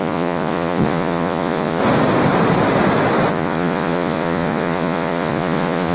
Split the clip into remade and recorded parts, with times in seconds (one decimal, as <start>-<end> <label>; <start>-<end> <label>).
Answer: 0.0-1.8 remade; 1.8-3.3 recorded; 3.3-5.9 remade